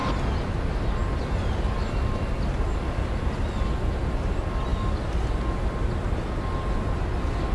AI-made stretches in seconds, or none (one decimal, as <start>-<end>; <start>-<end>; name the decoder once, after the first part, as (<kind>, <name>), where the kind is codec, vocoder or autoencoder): none